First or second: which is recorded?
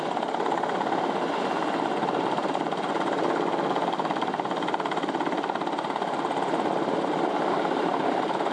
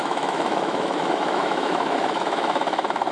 first